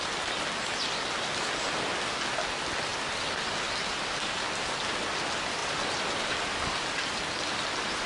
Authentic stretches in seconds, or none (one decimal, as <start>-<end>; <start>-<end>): 0.0-8.1